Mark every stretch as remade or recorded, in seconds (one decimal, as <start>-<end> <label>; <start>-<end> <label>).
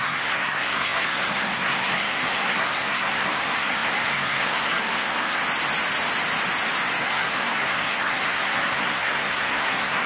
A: 0.0-5.4 remade; 5.4-7.0 recorded; 7.0-10.1 remade